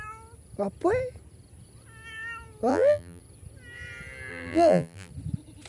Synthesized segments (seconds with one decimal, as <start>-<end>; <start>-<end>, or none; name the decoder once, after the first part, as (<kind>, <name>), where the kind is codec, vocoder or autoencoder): 2.7-3.2 (vocoder, BigVGAN v2); 4.3-5.1

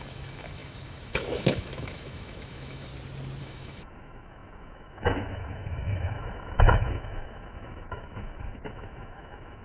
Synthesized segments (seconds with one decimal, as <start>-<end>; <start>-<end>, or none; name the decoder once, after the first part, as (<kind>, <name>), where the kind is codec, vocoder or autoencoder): 0.0-2.9 (autoencoder, DAC-VAE); 3.4-9.6